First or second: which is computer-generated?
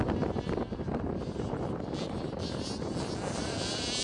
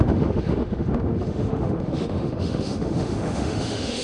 second